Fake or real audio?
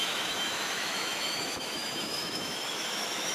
fake